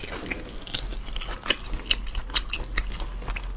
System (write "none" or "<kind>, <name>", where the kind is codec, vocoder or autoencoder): none